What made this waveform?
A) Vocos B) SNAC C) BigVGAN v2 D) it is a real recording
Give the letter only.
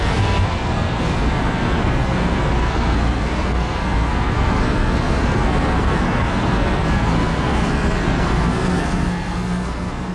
B